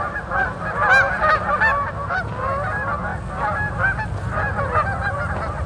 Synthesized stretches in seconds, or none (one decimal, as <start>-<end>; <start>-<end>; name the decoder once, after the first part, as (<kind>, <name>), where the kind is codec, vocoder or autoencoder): none